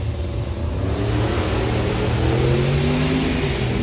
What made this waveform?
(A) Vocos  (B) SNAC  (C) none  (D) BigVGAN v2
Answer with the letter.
C